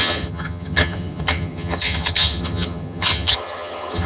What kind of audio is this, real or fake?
fake